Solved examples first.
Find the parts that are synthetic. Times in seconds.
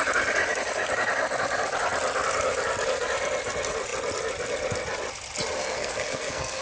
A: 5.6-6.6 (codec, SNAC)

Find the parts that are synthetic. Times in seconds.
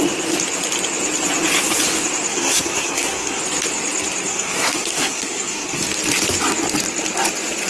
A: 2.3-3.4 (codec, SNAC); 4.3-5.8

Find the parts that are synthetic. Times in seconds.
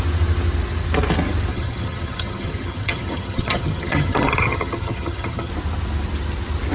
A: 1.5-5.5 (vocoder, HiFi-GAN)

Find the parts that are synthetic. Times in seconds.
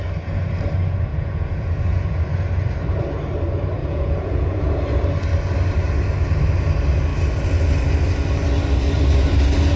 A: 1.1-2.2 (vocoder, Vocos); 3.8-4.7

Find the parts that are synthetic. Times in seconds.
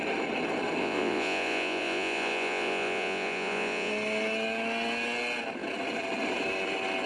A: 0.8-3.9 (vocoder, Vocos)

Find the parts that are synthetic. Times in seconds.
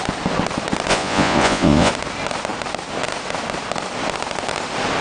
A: 0.9-1.9 (vocoder, Vocos)